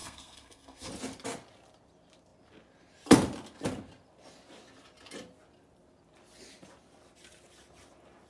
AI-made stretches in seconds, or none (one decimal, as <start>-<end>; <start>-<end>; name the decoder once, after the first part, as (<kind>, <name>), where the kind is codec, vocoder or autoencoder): 0.0-0.9 (codec, SNAC)

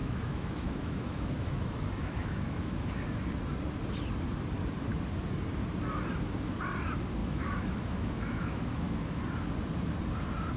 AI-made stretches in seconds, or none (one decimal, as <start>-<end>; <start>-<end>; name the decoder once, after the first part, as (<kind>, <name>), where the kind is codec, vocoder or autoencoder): 0.0-2.9 (autoencoder, DAC-VAE); 7.2-9.2

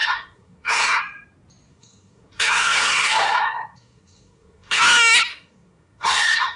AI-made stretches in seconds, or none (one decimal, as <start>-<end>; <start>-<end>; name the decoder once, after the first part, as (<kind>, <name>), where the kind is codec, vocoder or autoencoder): 0.0-1.0 (codec, SNAC); 1.7-4.8; 5.3-6.6

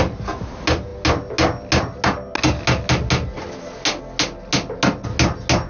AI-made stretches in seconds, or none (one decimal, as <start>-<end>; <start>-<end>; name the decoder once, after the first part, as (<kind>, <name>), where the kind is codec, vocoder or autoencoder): none